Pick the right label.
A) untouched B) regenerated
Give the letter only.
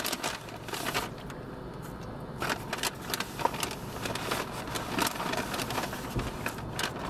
A